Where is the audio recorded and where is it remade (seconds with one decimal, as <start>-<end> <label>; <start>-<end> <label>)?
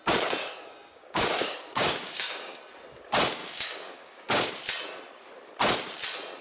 0.0-0.4 recorded; 0.4-2.6 remade; 2.6-3.4 recorded; 3.4-4.5 remade; 4.5-6.4 recorded